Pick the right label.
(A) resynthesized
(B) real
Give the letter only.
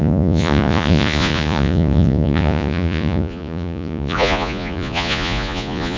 A